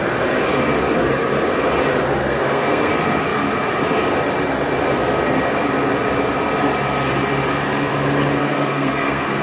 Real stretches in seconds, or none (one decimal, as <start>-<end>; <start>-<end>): 0.0-2.2; 2.9-8.4